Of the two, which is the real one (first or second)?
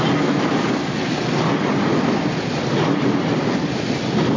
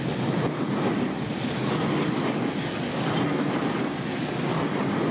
first